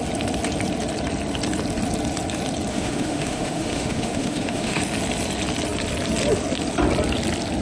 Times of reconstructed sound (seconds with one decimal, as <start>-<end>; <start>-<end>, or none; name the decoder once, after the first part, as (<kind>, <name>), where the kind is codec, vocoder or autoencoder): 2.7-4.8 (autoencoder, DAC-VAE)